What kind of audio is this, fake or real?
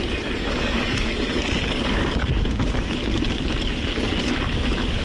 fake